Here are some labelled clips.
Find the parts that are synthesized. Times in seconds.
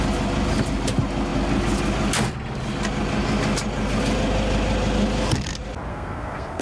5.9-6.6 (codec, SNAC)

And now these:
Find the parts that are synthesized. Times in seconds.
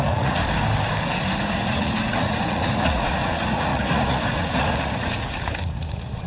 0.0-0.4 (vocoder, Vocos); 1.5-6.3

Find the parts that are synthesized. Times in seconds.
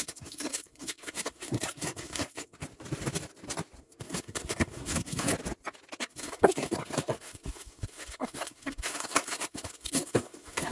0.0-2.6 (codec, SNAC); 3.8-5.3; 6.0-10.7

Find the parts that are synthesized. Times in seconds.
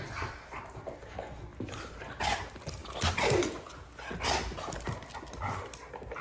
none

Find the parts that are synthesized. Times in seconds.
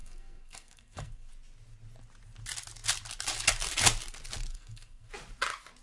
0.0-1.3 (codec, SNAC); 4.5-5.1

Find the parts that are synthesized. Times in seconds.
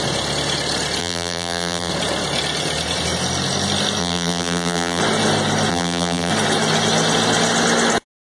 1.0-1.9 (vocoder, BigVGAN v2); 4.0-5.0; 5.7-6.3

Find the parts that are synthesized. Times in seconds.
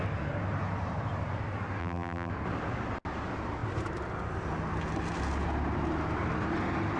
1.8-2.3 (vocoder, BigVGAN v2)